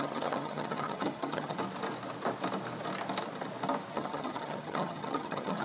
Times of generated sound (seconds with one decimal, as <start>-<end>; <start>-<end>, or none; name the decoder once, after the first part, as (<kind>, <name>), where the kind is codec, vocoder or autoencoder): 0.0-1.6 (vocoder, HiFi-GAN); 3.9-5.6